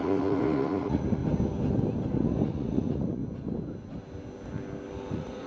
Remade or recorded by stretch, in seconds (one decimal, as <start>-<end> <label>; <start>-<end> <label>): 0.0-1.2 remade; 1.2-2.1 recorded; 2.1-3.2 remade; 3.2-5.1 recorded; 5.1-5.5 remade